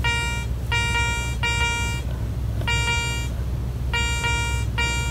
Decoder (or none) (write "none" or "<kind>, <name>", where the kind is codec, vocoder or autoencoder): none